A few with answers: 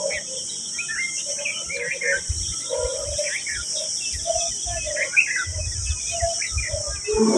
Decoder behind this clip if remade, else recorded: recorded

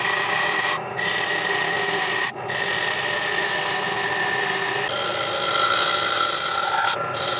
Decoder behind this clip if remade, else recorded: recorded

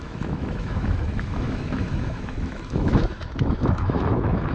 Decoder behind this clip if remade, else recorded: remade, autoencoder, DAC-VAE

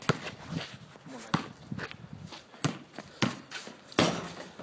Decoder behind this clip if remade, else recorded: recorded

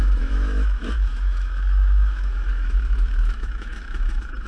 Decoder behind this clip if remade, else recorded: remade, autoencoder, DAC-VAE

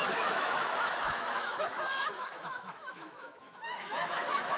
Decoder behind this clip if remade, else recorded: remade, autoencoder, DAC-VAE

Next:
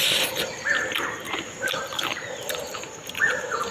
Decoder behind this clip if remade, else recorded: recorded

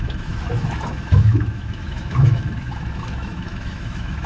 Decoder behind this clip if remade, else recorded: remade, autoencoder, DAC-VAE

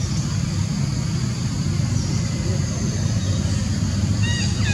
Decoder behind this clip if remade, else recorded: recorded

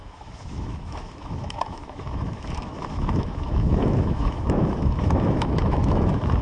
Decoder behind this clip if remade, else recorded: remade, autoencoder, DAC-VAE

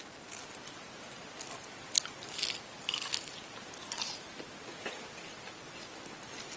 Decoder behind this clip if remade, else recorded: recorded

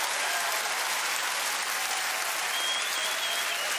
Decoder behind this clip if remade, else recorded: recorded